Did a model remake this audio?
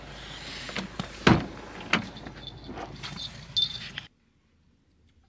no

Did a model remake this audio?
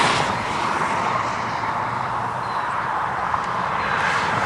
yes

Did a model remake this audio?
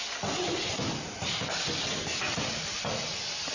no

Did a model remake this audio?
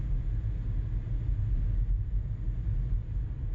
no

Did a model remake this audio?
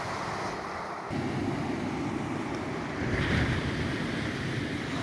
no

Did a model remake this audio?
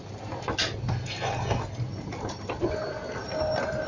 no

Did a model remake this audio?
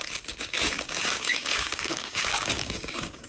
yes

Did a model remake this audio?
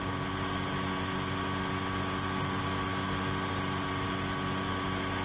no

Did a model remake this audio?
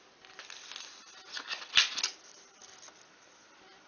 no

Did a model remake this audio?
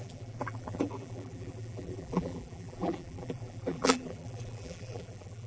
yes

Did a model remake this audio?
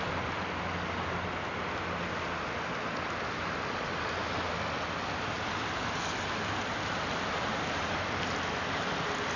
no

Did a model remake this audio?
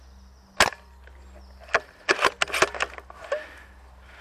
no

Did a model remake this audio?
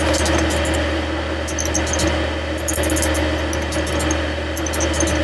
no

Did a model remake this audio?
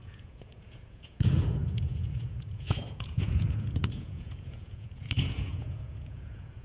yes